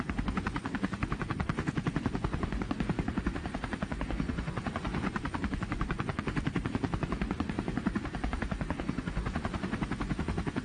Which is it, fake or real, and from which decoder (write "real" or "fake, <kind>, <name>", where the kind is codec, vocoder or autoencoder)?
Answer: fake, vocoder, Vocos